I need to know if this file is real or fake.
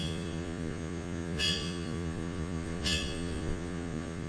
fake